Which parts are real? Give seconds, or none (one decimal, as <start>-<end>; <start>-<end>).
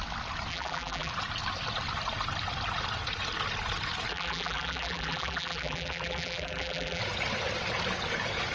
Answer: 0.0-0.5; 1.1-4.1; 7.0-8.5